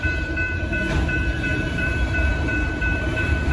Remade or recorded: remade